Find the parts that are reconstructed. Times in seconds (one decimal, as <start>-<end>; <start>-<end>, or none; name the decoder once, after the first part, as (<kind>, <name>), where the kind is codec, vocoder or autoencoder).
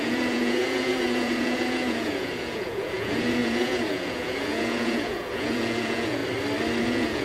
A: 0.0-6.2 (vocoder, Vocos); 6.8-7.2